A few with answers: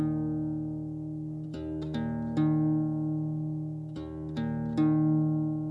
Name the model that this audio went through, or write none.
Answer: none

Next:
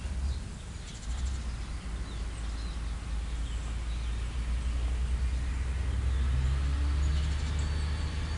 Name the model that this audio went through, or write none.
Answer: none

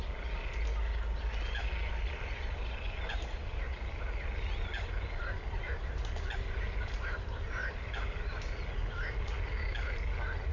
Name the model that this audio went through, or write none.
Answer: none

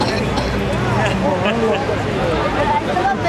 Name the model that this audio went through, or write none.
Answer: none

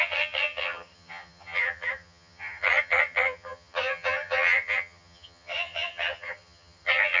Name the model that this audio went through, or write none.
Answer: vocoder, HiFi-GAN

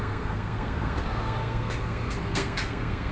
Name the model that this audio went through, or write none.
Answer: codec, SNAC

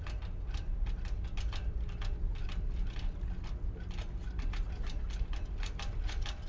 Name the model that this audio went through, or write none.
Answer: none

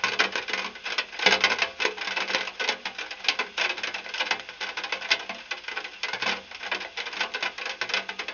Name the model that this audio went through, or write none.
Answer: none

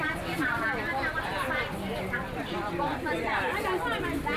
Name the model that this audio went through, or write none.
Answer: vocoder, BigVGAN v2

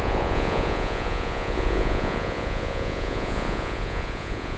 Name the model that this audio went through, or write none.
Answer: vocoder, Vocos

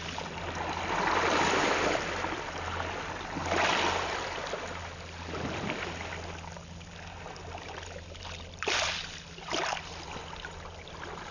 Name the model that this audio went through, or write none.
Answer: none